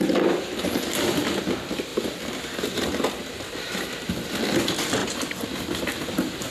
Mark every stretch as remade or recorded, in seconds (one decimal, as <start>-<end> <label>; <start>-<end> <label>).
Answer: 0.0-6.5 recorded